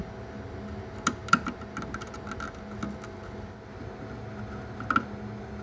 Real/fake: real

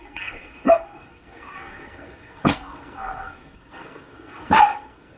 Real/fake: fake